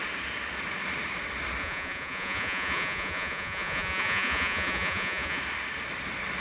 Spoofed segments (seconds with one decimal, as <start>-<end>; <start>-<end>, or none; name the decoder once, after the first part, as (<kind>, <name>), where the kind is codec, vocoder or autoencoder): 1.6-5.4 (vocoder, Vocos)